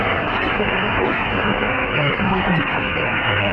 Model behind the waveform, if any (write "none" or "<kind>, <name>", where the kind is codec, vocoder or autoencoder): codec, SNAC